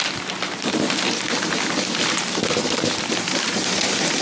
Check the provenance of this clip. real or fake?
real